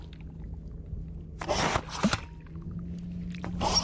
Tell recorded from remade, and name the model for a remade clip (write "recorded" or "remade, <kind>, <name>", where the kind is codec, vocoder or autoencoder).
recorded